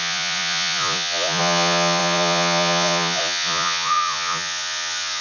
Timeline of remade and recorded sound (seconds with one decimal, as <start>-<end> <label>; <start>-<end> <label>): 0.0-5.2 remade